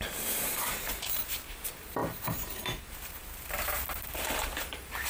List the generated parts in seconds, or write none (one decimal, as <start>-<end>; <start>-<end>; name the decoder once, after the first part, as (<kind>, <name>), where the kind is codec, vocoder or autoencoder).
0.0-5.1 (vocoder, BigVGAN v2)